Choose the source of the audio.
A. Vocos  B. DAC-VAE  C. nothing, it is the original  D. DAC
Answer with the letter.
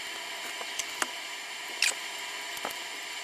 C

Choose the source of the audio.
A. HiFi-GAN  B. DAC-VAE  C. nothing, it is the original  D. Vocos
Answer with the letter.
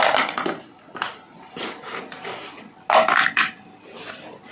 C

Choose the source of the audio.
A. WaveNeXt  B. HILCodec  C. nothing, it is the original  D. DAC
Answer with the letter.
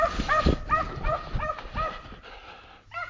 C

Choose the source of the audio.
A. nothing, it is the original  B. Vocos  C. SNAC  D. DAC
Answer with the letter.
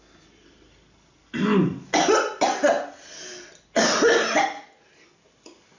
A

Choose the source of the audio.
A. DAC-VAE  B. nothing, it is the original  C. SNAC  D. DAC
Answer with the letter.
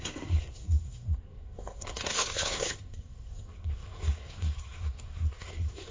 C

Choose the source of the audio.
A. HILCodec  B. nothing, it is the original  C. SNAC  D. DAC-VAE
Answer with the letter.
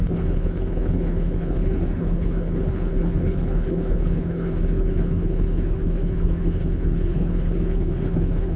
A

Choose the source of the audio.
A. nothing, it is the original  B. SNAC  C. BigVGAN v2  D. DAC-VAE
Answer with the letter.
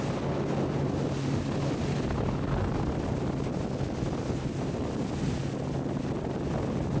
A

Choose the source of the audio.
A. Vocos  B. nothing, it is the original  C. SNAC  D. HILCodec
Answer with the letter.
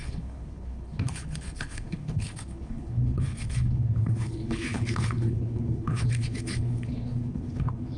D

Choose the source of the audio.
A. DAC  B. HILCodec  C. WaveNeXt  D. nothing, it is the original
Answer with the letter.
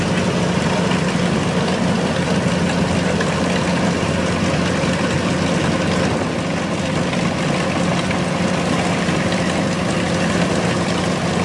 D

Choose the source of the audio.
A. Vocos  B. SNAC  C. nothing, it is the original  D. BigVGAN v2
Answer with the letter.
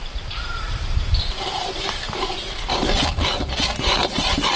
D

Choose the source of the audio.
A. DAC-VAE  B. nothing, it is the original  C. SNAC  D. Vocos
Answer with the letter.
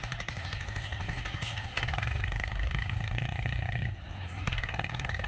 C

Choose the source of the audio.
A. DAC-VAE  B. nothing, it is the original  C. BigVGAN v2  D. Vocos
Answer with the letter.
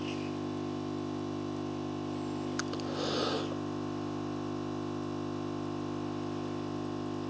B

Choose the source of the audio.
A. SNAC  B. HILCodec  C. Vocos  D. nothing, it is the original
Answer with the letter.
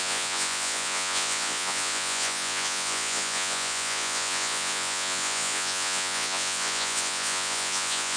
C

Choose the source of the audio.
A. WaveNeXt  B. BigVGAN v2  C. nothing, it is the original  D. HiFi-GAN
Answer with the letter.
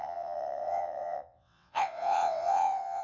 A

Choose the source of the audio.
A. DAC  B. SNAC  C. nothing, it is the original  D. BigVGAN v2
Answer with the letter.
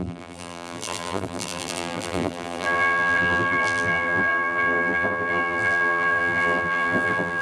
D